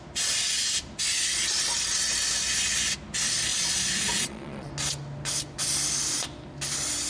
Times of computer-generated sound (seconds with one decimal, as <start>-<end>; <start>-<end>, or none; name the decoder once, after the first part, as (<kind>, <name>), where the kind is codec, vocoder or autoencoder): 3.5-4.7 (vocoder, Vocos)